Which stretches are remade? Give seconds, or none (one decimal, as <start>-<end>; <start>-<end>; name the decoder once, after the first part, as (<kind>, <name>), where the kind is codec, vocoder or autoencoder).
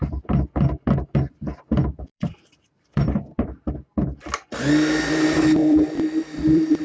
2.1-3.7 (vocoder, BigVGAN v2); 5.6-6.8